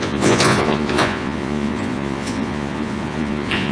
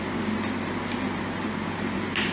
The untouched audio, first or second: second